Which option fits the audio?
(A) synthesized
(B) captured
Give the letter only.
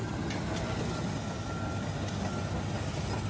B